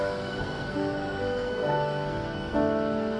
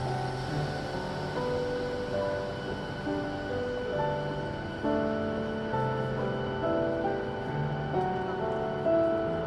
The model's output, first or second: first